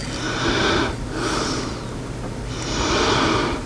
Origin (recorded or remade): recorded